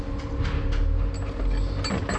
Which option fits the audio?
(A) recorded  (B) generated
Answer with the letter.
A